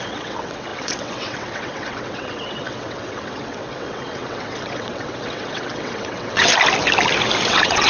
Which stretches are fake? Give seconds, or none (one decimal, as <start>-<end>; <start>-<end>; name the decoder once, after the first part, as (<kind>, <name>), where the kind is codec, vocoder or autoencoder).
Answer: 0.0-6.5 (vocoder, WaveNeXt); 7.5-7.9